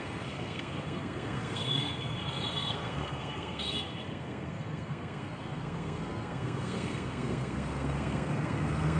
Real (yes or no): no